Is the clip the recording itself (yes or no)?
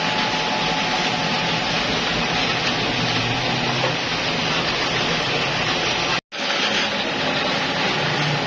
yes